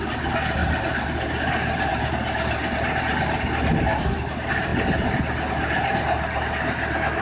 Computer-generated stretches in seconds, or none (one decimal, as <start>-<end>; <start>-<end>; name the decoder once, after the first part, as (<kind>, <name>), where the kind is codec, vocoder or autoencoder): 0.6-3.0 (vocoder, BigVGAN v2)